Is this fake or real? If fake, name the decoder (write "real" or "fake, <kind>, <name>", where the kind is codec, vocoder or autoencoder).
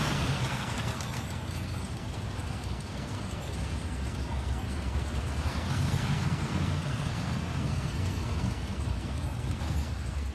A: fake, codec, SNAC